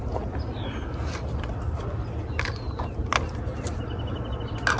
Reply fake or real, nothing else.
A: real